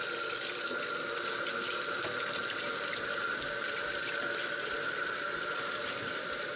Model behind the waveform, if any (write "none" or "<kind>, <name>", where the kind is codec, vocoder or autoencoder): none